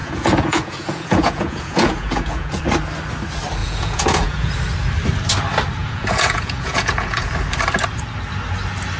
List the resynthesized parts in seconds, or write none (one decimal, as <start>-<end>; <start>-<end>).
0.0-2.6; 3.6-4.5; 5.8-7.3